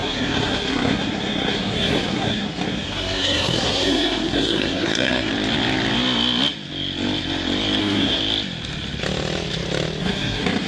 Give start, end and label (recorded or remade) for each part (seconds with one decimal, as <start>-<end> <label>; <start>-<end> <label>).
0.0-5.3 remade; 5.3-7.8 recorded; 7.8-8.2 remade; 8.2-10.0 recorded; 10.0-10.7 remade